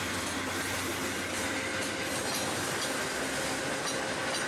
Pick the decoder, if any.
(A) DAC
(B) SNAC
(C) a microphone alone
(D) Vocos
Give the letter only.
C